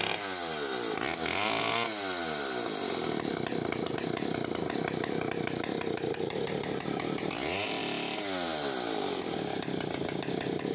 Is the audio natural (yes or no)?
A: yes